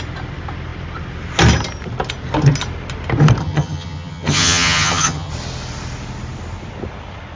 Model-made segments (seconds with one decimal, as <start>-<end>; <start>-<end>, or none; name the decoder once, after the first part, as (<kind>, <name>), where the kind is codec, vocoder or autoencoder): 3.4-5.3 (vocoder, HiFi-GAN)